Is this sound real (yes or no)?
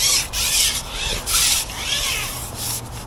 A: yes